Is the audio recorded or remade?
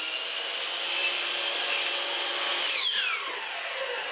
recorded